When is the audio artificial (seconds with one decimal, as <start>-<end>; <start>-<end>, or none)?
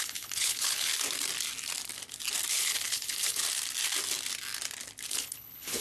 0.0-0.9; 2.5-3.4; 5.1-5.8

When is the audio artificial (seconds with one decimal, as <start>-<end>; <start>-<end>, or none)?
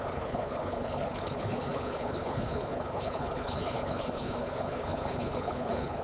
0.0-6.0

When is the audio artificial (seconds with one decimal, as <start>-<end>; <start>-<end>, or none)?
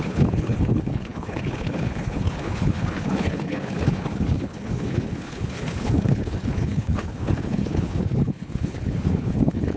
0.0-9.8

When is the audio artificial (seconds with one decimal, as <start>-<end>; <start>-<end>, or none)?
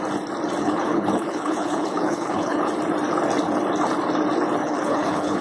0.6-2.7; 4.6-5.4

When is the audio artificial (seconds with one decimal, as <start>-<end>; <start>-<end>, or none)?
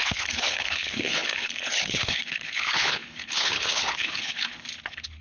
0.0-5.2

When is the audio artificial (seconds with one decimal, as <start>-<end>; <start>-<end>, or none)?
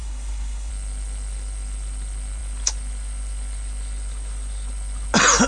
0.0-0.7